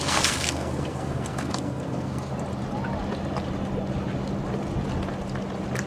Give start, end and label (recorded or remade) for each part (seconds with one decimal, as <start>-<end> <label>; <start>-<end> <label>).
0.0-2.3 remade; 2.3-5.9 recorded